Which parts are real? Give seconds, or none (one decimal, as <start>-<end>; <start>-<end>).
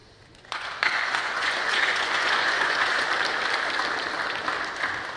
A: 3.1-5.2